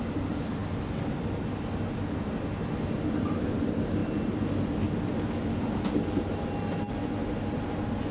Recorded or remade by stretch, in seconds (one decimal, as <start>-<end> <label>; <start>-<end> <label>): 0.0-8.1 recorded